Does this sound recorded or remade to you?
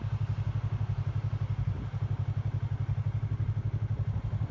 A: recorded